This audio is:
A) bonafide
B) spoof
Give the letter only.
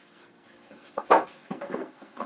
B